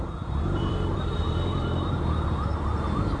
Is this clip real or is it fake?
fake